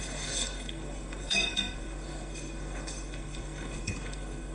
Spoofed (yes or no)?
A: yes